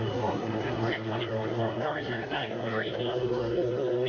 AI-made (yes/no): yes